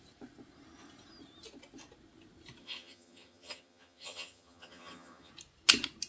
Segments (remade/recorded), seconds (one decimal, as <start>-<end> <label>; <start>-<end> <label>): 0.0-2.6 recorded; 2.6-5.3 remade; 5.3-6.1 recorded

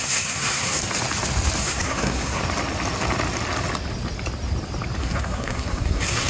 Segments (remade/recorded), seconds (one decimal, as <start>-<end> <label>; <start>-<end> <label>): 0.0-0.8 remade; 0.8-1.6 recorded; 1.6-2.4 remade; 2.4-5.0 recorded; 5.0-6.3 remade

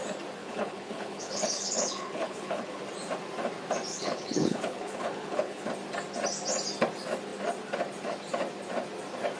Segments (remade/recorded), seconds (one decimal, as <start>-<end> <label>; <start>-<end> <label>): 0.0-0.4 recorded; 0.4-2.8 remade; 2.8-3.9 recorded; 3.9-5.7 remade; 5.7-9.4 recorded

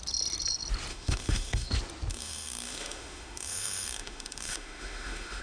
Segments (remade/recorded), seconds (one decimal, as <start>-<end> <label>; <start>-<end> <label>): 0.0-0.9 recorded; 0.9-1.7 remade; 1.7-2.1 recorded; 2.1-5.4 remade

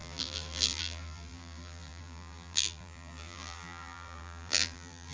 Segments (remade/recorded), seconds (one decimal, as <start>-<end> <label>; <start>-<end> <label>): 0.0-5.1 remade